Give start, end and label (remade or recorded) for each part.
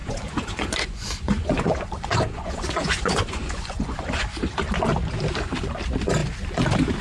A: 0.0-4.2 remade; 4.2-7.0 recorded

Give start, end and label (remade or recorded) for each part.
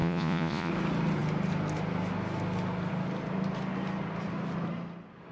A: 0.0-0.7 remade; 0.7-5.3 recorded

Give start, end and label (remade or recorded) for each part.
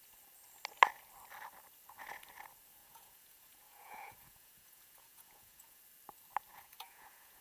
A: 0.0-2.8 recorded; 2.8-5.8 remade; 5.8-6.5 recorded; 6.5-7.4 remade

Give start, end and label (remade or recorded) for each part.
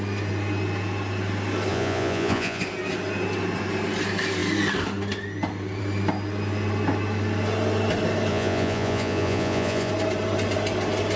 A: 0.0-1.7 recorded; 1.7-2.6 remade; 2.6-8.3 recorded; 8.3-9.9 remade; 9.9-11.2 recorded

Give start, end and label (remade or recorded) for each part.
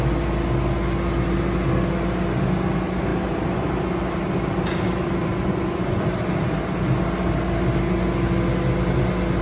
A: 0.0-5.3 recorded; 5.3-6.0 remade; 6.0-9.4 recorded